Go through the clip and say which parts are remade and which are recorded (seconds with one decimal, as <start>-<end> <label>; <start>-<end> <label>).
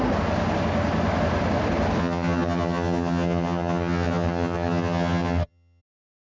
0.0-2.0 recorded; 2.0-5.8 remade; 5.8-6.3 recorded